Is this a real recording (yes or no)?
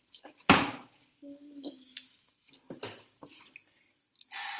yes